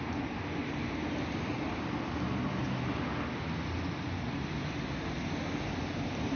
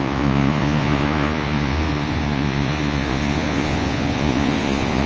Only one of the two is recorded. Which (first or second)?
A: first